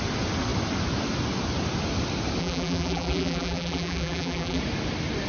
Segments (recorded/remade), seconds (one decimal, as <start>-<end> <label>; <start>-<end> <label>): 0.0-2.4 recorded; 2.4-4.6 remade; 4.6-5.3 recorded